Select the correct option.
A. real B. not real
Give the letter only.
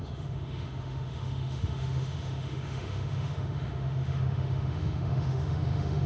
B